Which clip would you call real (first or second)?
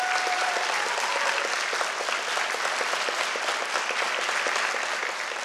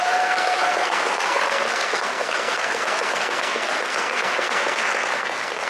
first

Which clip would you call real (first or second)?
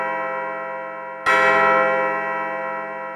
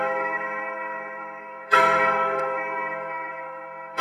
first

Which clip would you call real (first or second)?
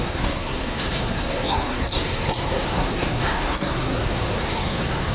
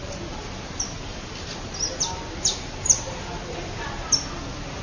second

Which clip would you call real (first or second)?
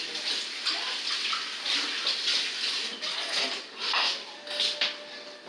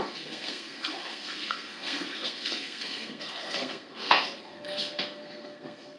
first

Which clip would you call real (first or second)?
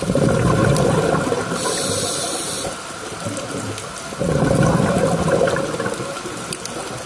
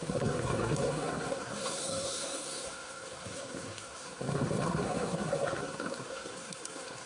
first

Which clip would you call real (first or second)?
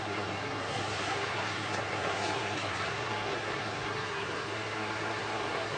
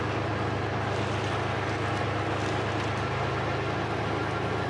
second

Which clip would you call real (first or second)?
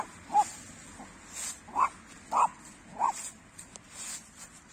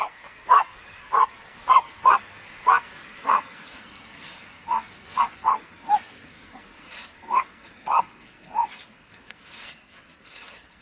first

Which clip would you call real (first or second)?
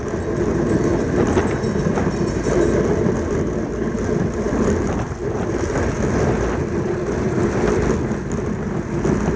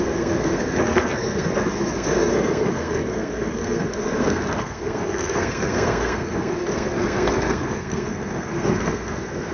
first